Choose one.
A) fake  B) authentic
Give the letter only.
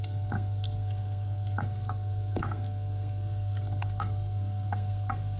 A